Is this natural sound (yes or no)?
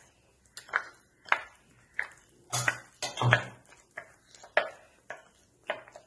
yes